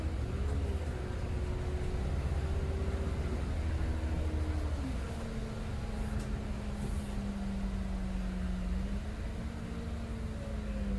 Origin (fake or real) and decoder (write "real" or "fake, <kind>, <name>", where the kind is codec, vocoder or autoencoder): real